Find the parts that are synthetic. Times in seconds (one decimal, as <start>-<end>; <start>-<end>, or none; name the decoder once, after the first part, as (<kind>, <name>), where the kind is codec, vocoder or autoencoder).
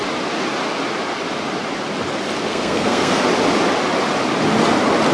2.5-3.2 (codec, SNAC)